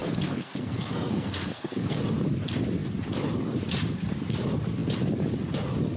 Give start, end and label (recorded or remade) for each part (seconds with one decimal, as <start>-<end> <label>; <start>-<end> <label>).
0.0-2.0 remade; 2.0-6.0 recorded